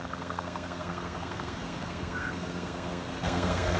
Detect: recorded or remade remade